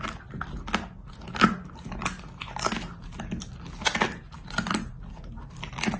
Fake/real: real